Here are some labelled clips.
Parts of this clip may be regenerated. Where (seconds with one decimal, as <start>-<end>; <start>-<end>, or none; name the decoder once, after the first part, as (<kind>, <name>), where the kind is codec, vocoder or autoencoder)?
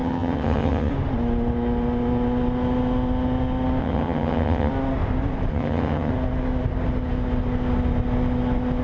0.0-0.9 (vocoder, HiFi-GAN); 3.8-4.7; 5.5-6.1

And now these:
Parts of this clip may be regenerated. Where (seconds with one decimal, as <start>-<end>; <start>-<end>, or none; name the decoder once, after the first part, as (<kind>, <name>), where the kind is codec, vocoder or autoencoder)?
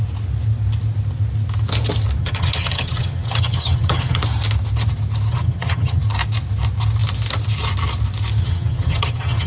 2.2-4.2 (vocoder, HiFi-GAN); 5.3-6.0; 8.4-9.5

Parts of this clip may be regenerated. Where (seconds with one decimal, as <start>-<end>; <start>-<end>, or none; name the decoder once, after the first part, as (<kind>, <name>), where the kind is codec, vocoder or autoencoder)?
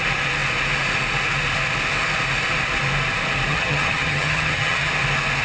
3.5-4.9 (vocoder, HiFi-GAN)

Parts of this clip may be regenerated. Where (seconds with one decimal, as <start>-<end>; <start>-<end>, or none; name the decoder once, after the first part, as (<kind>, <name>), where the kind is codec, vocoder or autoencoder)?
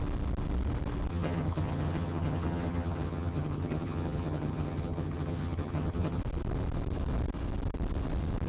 1.1-6.2 (vocoder, HiFi-GAN)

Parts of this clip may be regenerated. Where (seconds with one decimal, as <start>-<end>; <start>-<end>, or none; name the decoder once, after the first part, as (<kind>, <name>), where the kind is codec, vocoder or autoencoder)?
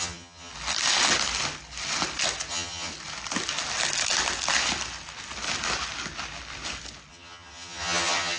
0.0-0.5 (vocoder, HiFi-GAN); 2.5-2.9; 7.1-8.4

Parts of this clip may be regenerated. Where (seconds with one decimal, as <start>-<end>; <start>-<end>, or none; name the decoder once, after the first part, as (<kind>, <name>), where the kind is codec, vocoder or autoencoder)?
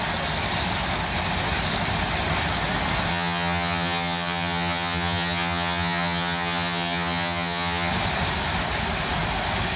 3.1-7.9 (vocoder, HiFi-GAN)